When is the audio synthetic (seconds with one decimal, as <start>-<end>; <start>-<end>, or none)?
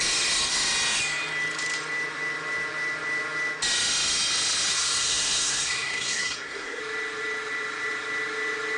4.7-6.8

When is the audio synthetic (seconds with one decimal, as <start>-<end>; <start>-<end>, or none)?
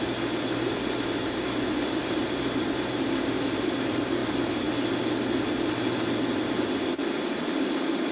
2.0-2.9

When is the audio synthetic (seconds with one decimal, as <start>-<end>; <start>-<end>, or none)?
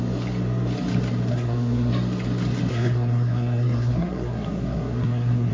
1.3-1.9; 2.7-5.5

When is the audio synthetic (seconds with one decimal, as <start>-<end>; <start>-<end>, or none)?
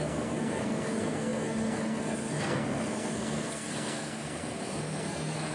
0.0-5.5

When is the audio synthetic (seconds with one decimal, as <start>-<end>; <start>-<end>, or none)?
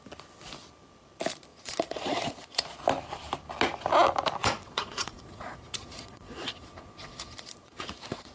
1.5-2.6; 4.4-8.3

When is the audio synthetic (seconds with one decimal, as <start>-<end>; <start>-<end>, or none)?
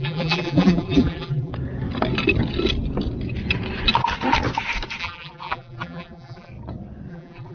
0.0-1.5; 5.0-6.5; 7.1-7.5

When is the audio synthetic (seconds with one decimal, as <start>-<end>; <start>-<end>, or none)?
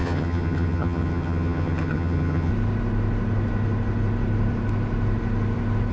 0.0-2.5